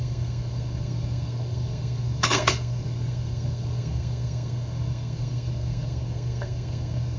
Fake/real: fake